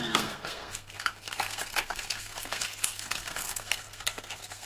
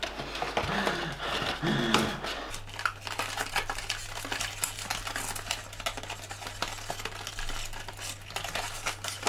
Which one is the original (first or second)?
second